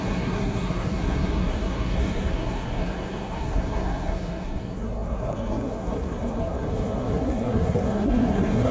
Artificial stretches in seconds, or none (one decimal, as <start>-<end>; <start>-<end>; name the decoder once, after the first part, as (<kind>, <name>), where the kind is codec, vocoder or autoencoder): 0.0-8.7 (codec, SNAC)